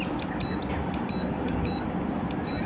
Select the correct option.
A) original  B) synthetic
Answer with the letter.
A